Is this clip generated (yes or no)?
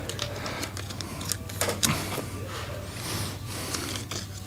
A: no